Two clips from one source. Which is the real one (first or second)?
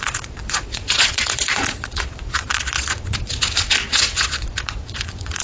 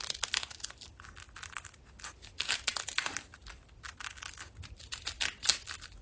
second